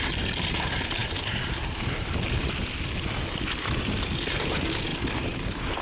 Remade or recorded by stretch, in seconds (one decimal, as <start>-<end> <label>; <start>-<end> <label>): 0.0-4.9 recorded; 4.9-5.8 remade